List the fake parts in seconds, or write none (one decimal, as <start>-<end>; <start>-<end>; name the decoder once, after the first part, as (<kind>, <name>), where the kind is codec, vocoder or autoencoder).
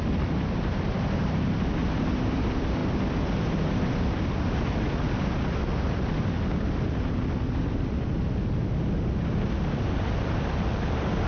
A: none